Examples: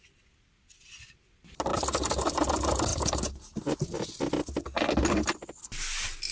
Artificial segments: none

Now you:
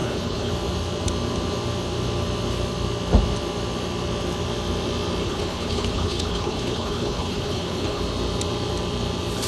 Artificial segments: 0.0-0.5 (codec, HILCodec); 5.2-8.0

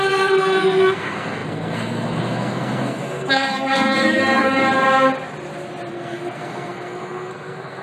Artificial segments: 0.0-4.6 (codec, SNAC); 5.9-7.8

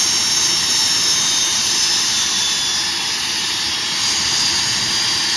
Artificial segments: 1.5-2.5 (vocoder, BigVGAN v2)